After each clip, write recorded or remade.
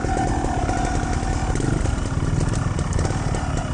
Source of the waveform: recorded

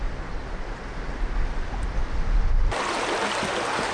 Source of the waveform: recorded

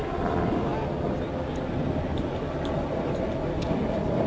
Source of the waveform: recorded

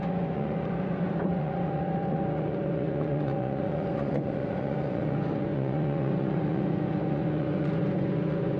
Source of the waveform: remade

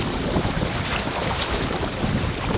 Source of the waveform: recorded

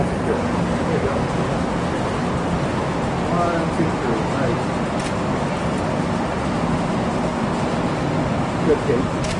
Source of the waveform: recorded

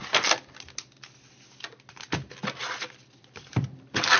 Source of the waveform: recorded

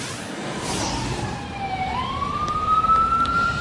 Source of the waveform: remade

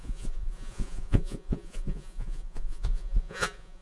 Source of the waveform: remade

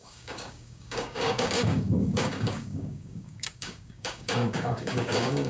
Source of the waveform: remade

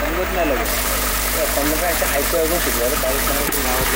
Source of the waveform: remade